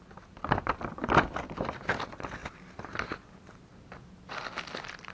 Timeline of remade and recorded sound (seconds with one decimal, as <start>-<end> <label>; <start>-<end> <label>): 0.0-5.1 recorded